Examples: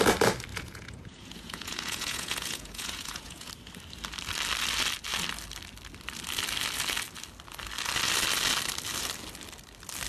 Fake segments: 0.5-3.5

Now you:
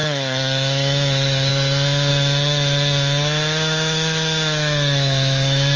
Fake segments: 0.0-1.5; 2.1-5.8

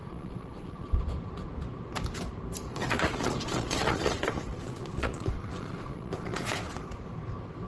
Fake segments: 0.0-1.0; 2.7-6.8

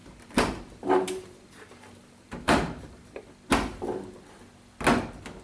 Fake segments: 0.0-3.2

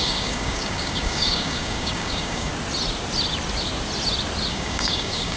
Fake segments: 0.0-2.5; 4.5-5.4

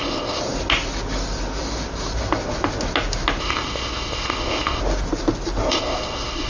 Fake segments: 0.0-0.4; 3.4-4.8; 5.7-6.5